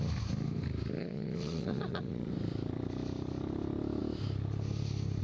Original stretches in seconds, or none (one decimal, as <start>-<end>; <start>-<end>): 0.0-1.0; 2.3-5.2